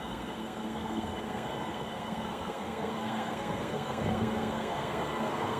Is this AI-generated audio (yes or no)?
yes